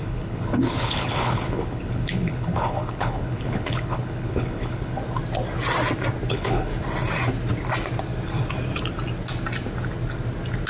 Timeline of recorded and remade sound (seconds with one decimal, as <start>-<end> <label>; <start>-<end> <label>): 0.0-5.0 remade; 5.0-6.3 recorded; 6.3-6.7 remade; 6.7-10.7 recorded